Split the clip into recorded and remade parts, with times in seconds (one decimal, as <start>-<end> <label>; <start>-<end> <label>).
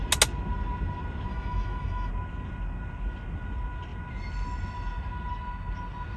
0.0-1.3 recorded; 1.3-2.1 remade; 2.1-6.2 recorded